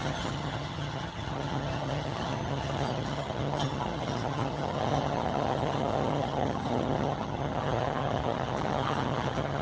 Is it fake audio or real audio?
fake